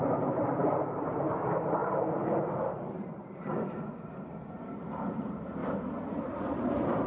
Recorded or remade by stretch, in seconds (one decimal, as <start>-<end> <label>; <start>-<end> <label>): 0.0-3.5 remade; 3.5-5.1 recorded; 5.1-5.6 remade; 5.6-6.2 recorded; 6.2-7.1 remade